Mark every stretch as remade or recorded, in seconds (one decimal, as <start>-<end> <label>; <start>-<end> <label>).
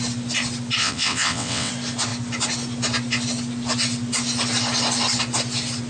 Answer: 0.0-0.8 recorded; 0.8-1.7 remade; 1.7-5.9 recorded